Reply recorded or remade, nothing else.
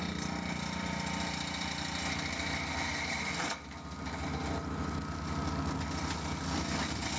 recorded